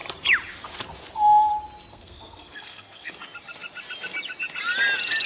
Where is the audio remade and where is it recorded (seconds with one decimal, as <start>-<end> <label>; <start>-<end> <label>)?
0.0-1.9 recorded; 1.9-3.1 remade; 3.1-5.3 recorded